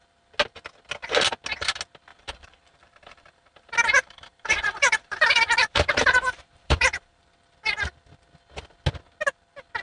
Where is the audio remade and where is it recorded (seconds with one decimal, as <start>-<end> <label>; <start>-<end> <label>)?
0.0-2.1 recorded; 2.1-7.3 remade; 7.3-9.8 recorded